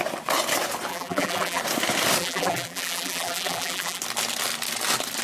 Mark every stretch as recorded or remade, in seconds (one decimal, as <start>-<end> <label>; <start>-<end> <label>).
0.0-0.9 recorded; 0.9-1.6 remade; 1.6-2.2 recorded; 2.2-4.0 remade; 4.0-5.2 recorded